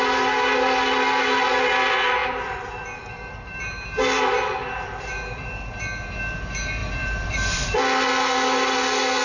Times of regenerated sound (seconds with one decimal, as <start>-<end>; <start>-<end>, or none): 2.2-5.7; 6.8-7.8